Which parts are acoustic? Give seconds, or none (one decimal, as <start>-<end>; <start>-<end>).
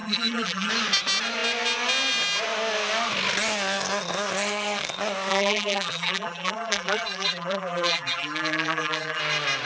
0.7-5.3; 9.2-9.7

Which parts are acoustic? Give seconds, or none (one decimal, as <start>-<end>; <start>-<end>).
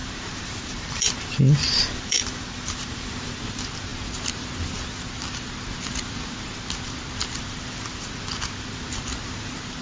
3.4-9.8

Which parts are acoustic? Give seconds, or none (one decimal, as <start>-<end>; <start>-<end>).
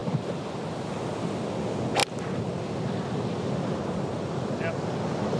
0.0-5.4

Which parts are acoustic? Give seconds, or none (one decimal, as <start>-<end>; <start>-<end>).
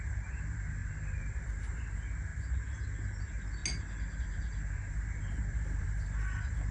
2.3-3.2; 3.6-4.2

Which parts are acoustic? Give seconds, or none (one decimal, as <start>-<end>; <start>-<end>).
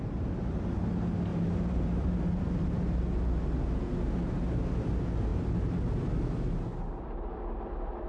0.0-1.3; 2.2-8.1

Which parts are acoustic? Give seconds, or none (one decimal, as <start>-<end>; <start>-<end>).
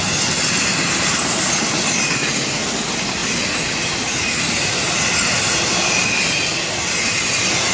0.0-3.2; 6.2-7.7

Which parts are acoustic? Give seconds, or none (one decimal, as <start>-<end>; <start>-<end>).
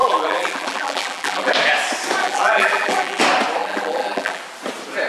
1.5-2.2; 3.2-3.6; 4.4-5.1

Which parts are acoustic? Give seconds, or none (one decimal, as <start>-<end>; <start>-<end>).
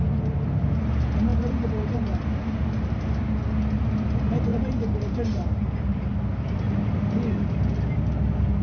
0.0-1.3; 3.3-4.5; 6.0-8.6